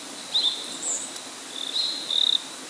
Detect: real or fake real